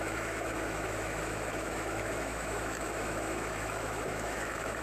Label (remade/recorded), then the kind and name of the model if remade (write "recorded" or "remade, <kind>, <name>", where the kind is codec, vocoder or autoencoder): remade, autoencoder, DAC-VAE